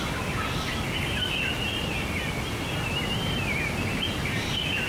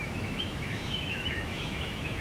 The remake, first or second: second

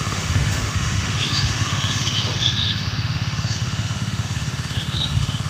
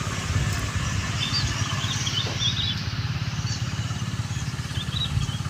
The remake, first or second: first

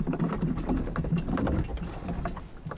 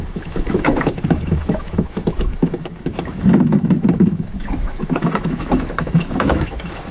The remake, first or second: second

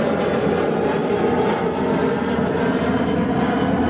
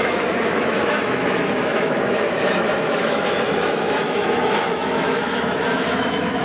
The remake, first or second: second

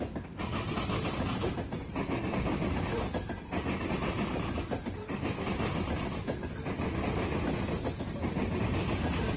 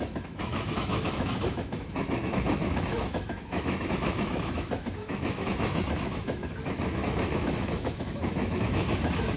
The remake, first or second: second